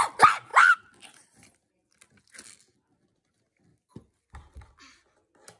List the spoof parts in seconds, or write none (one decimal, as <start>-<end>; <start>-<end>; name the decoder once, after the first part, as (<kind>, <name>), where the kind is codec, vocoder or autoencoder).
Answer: none